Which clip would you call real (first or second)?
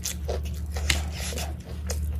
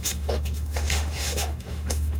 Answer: first